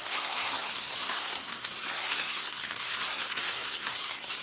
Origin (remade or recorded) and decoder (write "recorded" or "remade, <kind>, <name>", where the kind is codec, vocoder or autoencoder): remade, codec, SNAC